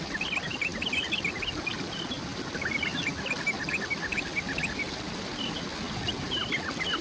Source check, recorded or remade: recorded